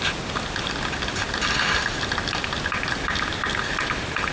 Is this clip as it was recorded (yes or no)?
yes